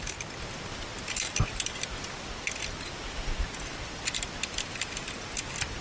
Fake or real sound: real